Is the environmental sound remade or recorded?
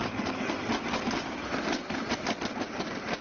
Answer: recorded